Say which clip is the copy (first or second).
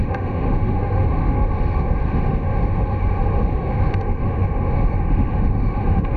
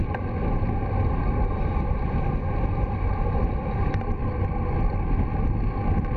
first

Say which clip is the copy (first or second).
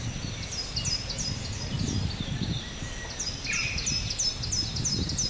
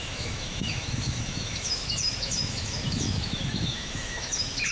second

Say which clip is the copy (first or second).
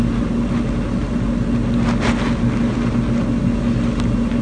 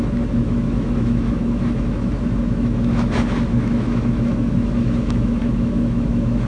second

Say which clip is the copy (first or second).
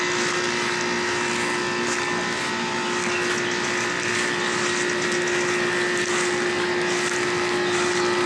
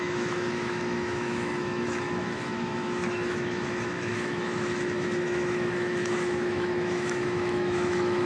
second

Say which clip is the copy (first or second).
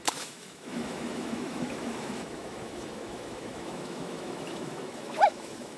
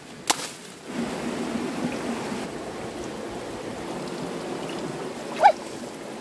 first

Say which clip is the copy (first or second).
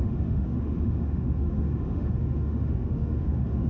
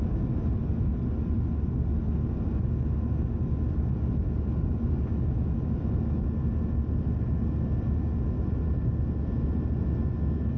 first